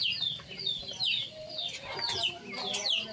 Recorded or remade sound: recorded